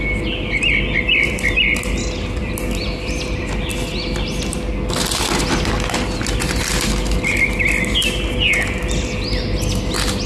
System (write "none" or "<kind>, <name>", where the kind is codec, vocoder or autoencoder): none